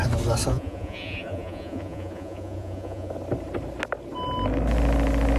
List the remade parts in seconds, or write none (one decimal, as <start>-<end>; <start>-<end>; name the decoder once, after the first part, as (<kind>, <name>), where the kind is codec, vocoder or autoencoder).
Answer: 0.5-3.1 (vocoder, Vocos)